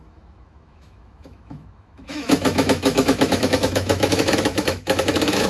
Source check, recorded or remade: remade